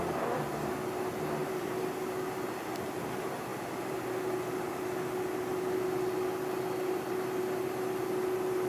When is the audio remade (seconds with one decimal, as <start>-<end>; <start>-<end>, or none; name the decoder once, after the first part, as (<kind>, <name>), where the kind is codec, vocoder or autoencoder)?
1.4-1.9 (vocoder, BigVGAN v2)